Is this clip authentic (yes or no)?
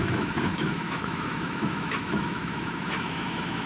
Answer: no